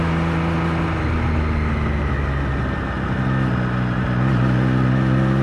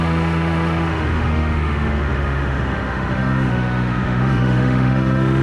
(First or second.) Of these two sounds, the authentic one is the first